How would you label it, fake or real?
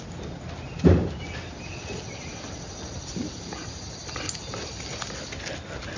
real